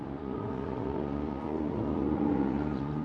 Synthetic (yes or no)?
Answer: yes